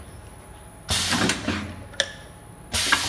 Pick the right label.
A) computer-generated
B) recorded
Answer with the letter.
B